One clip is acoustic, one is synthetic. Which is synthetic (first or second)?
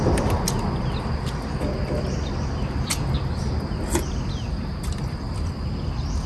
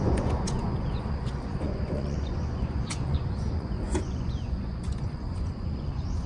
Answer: second